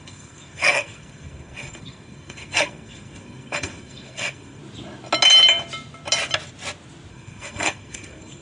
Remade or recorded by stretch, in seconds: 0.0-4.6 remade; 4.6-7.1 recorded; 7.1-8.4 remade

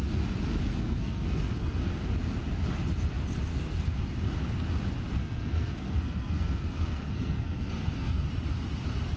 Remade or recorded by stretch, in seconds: 0.0-0.6 recorded; 0.6-2.0 remade; 2.0-3.5 recorded; 3.5-4.0 remade; 4.0-5.2 recorded; 5.2-8.3 remade; 8.3-9.2 recorded

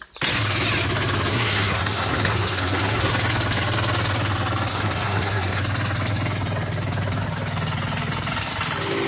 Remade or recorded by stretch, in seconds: 0.0-1.3 recorded; 1.3-3.1 remade; 3.1-4.7 recorded; 4.7-5.6 remade; 5.6-9.1 recorded

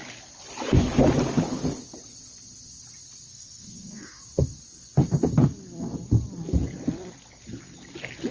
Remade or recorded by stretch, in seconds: 0.0-3.3 recorded; 3.3-4.2 remade; 4.2-8.3 recorded